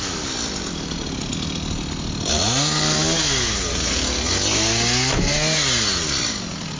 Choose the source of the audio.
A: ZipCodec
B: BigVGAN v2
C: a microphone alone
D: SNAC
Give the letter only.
C